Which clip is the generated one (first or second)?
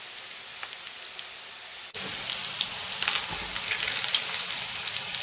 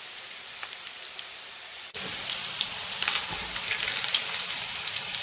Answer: second